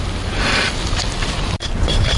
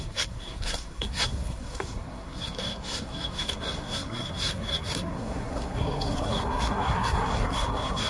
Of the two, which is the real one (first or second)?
first